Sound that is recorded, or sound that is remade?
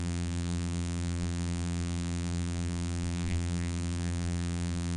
remade